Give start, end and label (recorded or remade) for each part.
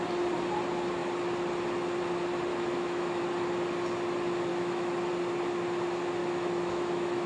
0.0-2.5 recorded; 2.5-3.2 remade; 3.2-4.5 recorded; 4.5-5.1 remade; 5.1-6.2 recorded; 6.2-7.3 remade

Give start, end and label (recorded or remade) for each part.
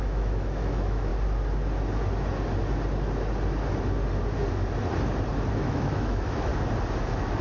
0.0-1.1 remade; 1.1-5.5 recorded; 5.5-6.5 remade; 6.5-7.0 recorded; 7.0-7.4 remade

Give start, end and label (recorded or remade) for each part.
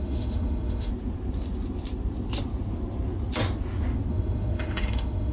0.0-0.9 remade; 0.9-4.1 recorded; 4.1-5.3 remade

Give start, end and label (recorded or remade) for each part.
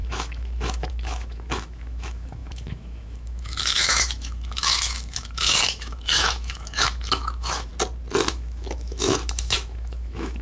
0.0-7.7 remade; 7.7-8.3 recorded; 8.3-10.4 remade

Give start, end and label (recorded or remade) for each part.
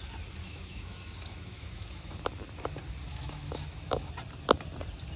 0.0-0.4 recorded; 0.4-2.2 remade; 2.2-3.1 recorded; 3.1-4.1 remade; 4.1-5.2 recorded